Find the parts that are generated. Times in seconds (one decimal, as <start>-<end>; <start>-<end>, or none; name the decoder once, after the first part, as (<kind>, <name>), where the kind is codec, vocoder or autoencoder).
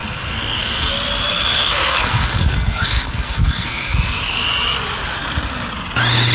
0.0-0.9 (codec, SNAC); 1.3-4.4